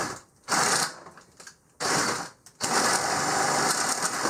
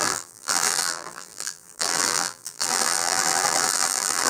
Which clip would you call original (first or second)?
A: first